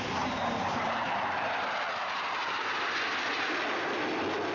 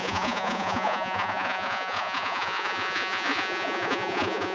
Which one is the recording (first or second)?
first